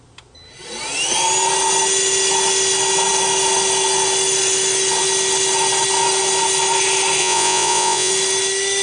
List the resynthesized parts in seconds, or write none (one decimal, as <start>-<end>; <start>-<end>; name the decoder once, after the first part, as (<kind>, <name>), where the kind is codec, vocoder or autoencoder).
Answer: 7.2-8.1 (vocoder, Vocos)